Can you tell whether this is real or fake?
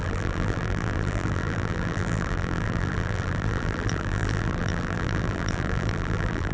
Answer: fake